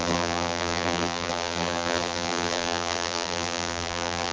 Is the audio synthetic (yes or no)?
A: yes